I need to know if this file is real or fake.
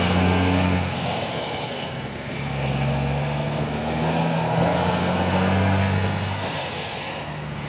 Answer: fake